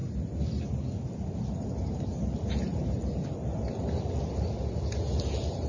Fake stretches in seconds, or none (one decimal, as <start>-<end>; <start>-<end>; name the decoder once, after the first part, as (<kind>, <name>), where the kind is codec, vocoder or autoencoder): none

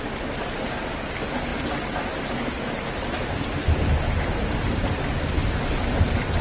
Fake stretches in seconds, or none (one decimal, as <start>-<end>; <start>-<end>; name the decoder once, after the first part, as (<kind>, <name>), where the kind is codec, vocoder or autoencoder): none